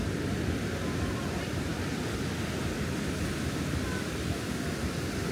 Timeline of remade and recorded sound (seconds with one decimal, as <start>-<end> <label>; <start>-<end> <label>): 0.0-5.3 recorded